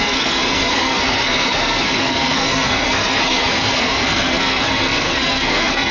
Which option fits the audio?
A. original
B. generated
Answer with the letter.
B